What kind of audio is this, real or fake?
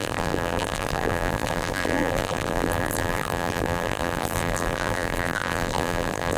fake